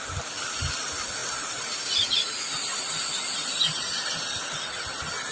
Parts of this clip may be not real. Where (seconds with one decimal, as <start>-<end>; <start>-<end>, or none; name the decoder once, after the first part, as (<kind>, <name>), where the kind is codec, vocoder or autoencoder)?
none

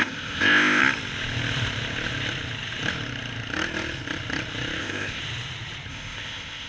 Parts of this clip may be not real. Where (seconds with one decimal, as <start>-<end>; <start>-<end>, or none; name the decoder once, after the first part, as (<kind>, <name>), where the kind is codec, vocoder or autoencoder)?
0.0-0.8 (codec, ZipCodec); 4.8-5.2; 5.9-6.7

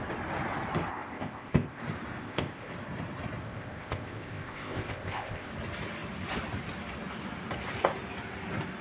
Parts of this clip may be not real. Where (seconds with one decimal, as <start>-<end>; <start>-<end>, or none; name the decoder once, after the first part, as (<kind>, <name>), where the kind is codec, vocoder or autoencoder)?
0.9-1.8 (codec, ZipCodec); 2.2-2.7; 3.4-5.5